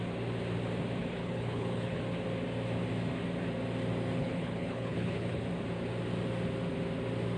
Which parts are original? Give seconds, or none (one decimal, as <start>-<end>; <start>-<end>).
0.0-1.0; 2.0-4.2; 5.4-7.4